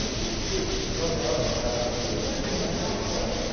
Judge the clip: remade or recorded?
recorded